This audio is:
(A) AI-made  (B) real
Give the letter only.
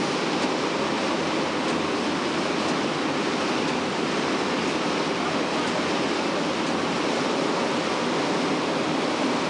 B